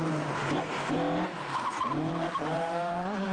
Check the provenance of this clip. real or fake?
fake